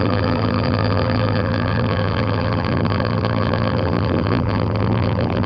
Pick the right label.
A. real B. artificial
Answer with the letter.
B